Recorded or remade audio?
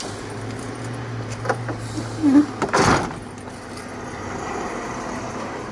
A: recorded